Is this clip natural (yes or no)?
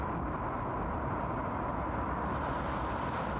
yes